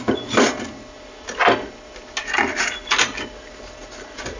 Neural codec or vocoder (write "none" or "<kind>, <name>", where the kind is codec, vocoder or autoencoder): none